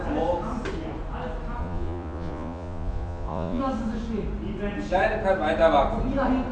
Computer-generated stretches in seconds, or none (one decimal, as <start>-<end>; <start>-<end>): 1.6-3.6